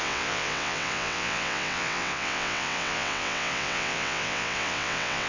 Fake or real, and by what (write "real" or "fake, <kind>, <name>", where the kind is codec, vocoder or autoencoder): fake, vocoder, WaveNeXt